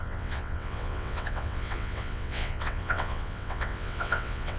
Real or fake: fake